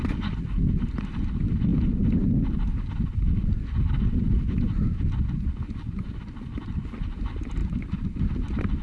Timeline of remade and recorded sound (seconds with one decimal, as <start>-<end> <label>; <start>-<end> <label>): 0.0-7.6 recorded; 7.6-8.2 remade; 8.2-8.8 recorded